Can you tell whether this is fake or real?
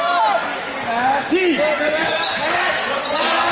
real